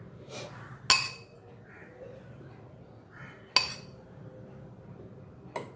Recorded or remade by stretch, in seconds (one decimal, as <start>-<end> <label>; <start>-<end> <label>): 0.0-5.8 recorded